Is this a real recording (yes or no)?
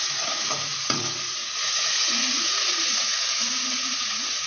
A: no